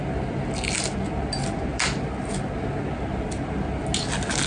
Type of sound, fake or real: real